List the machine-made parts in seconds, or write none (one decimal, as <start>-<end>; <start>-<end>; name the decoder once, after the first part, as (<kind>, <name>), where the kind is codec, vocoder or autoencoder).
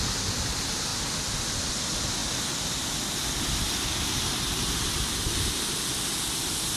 0.9-1.7 (vocoder, BigVGAN v2)